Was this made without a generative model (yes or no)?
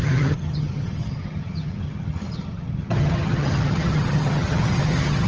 no